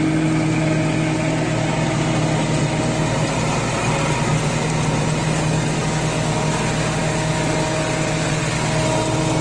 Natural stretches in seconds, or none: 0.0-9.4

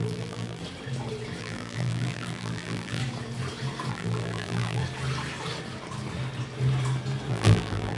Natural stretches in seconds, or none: 0.6-1.4; 3.0-3.9; 4.8-7.3

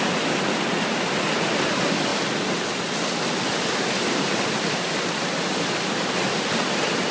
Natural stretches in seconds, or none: 2.1-3.3